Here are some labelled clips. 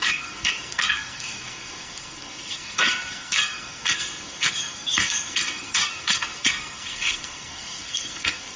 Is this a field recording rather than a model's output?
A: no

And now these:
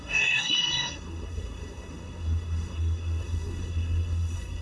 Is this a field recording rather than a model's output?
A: no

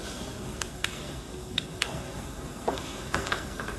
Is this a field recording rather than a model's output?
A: no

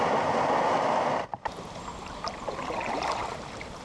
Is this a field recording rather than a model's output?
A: yes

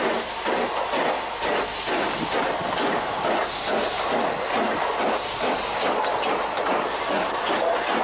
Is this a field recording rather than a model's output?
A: yes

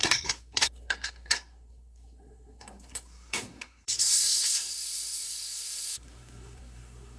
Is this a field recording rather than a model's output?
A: no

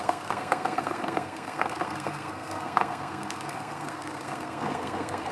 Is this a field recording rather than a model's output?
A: no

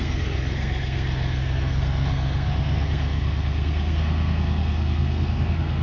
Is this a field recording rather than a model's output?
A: no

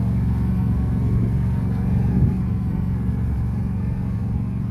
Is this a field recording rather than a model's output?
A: no